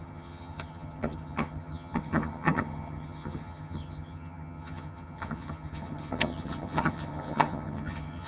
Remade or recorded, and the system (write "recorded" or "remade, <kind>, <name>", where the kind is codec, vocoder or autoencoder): remade, vocoder, HiFi-GAN